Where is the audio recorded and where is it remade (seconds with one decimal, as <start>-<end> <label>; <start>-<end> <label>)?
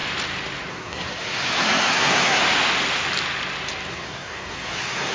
0.0-0.7 recorded; 0.7-2.4 remade; 2.4-3.9 recorded; 3.9-5.1 remade